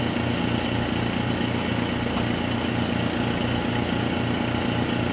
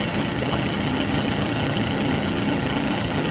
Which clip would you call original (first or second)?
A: first